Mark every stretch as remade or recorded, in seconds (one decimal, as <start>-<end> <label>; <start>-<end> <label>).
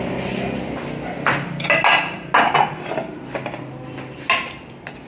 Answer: 0.0-5.1 recorded